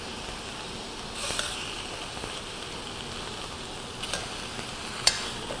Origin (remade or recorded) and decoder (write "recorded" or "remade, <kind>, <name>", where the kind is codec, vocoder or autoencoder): recorded